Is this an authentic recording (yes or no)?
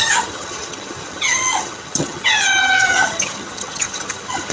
no